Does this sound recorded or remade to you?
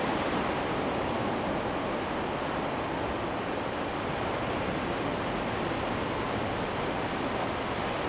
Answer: recorded